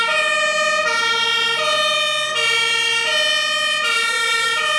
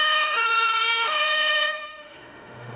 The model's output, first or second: second